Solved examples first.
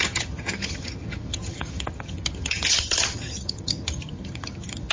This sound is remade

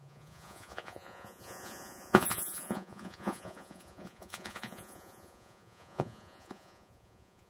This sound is remade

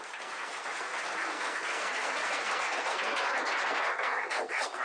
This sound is remade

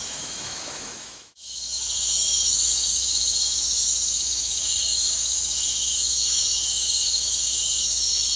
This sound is remade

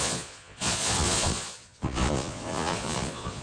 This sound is remade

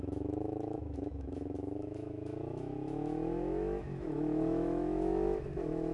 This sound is remade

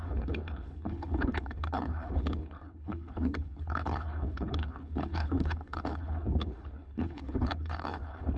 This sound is remade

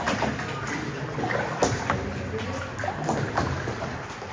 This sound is recorded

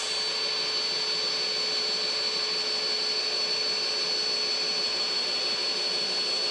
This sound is recorded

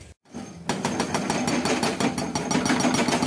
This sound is recorded